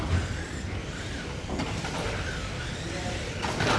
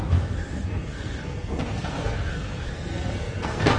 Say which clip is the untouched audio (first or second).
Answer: first